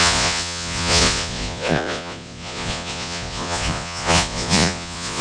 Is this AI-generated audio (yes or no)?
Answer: yes